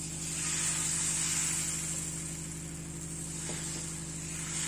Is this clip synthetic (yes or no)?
no